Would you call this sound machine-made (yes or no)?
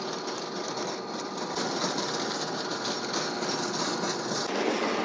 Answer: no